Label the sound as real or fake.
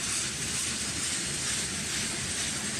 real